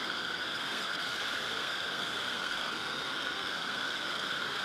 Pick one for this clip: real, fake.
fake